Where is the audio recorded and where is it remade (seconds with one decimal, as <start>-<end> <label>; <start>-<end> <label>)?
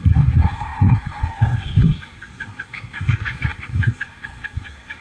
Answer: 0.0-5.0 remade